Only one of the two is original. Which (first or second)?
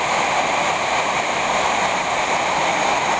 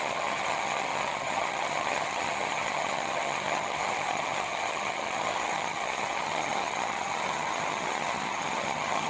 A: first